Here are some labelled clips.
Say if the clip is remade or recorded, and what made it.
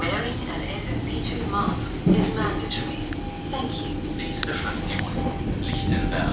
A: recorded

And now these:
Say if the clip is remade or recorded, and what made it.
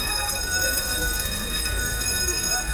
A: remade, codec, SNAC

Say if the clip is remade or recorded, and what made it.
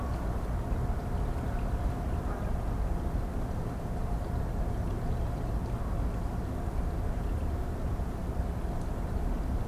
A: recorded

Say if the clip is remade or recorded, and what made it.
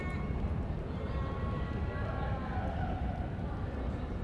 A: recorded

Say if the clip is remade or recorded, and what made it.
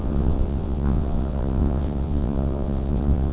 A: remade, vocoder, WaveNeXt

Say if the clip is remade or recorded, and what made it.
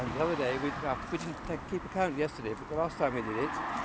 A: recorded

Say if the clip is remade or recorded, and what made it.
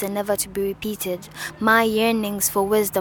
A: recorded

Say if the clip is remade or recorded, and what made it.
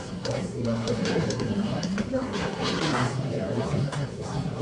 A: remade, codec, SNAC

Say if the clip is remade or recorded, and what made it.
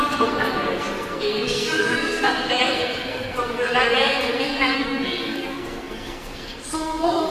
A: remade, codec, SNAC